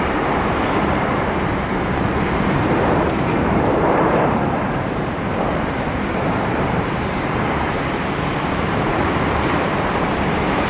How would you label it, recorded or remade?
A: remade